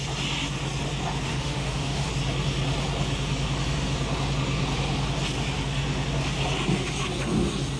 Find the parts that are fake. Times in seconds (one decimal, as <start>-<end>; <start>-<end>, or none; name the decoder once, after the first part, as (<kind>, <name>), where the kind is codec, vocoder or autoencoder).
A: 1.3-2.1 (autoencoder, DAC-VAE)